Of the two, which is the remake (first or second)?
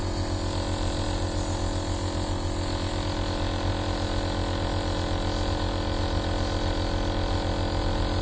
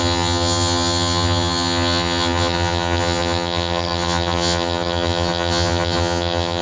second